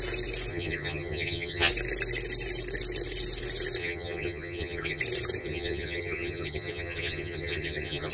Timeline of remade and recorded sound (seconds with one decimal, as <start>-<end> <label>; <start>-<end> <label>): 0.0-0.5 recorded; 0.5-1.7 remade; 1.7-3.8 recorded; 3.8-5.0 remade; 5.0-5.4 recorded; 5.4-8.1 remade